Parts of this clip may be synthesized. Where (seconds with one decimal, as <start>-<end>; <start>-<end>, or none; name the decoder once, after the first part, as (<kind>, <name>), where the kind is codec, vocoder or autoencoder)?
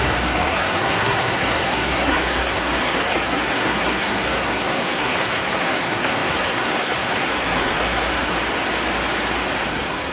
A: 0.0-8.3 (codec, SNAC); 9.7-10.1